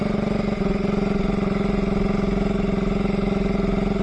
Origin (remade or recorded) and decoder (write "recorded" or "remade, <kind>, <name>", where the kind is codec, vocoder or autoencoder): recorded